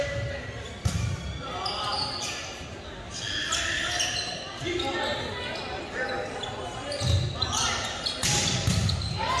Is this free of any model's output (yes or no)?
yes